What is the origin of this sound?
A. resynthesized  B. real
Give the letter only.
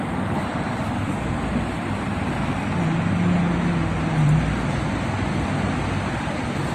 B